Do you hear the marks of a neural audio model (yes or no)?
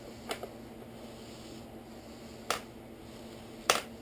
no